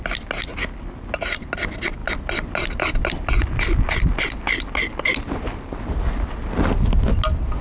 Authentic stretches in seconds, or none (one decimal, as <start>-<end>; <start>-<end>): 0.0-2.0; 3.1-7.6